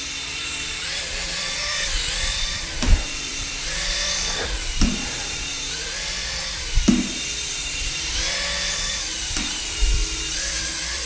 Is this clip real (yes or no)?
no